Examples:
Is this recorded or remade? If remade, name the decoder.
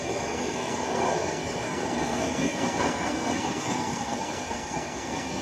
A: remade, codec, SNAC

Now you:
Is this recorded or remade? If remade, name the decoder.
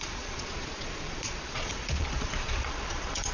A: remade, vocoder, Vocos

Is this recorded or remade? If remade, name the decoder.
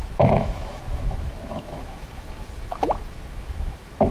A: remade, autoencoder, DAC-VAE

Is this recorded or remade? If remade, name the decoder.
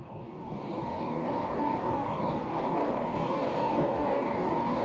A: remade, codec, DAC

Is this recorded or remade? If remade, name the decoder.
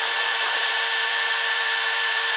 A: remade, vocoder, BigVGAN v2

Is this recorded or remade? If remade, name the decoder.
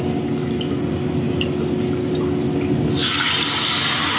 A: recorded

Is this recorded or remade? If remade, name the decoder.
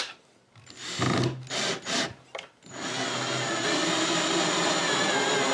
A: recorded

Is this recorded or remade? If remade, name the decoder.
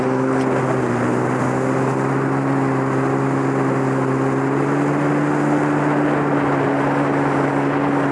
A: recorded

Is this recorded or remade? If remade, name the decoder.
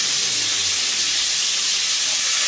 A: recorded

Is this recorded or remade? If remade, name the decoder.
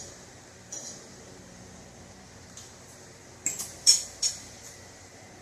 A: remade, vocoder, BigVGAN v2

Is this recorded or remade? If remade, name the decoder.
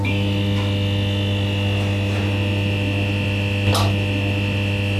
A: recorded